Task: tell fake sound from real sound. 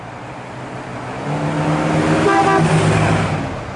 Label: real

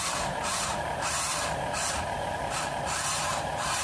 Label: real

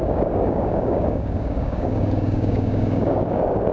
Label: fake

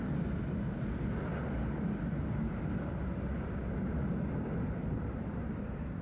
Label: real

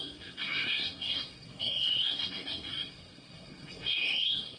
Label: fake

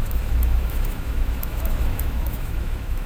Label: fake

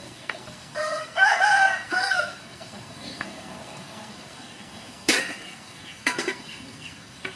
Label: fake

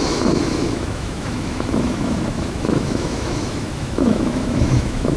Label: fake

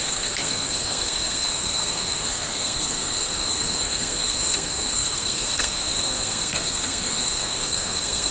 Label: fake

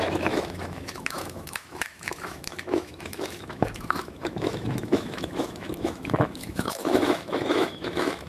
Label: fake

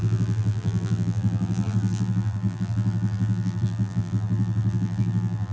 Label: fake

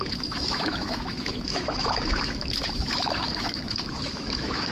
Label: fake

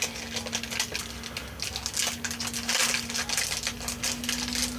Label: real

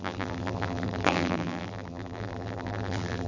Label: fake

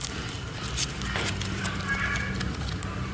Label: real